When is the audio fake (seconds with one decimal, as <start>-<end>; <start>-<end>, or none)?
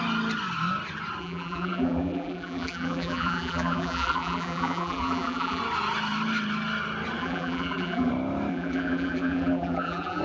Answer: 1.2-5.6; 7.2-8.1; 8.5-10.2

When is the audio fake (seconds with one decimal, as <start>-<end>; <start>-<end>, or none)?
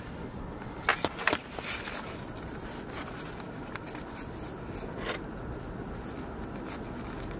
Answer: none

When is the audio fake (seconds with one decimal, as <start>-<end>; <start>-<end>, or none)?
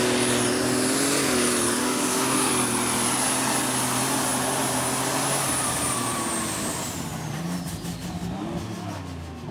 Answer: 1.8-2.5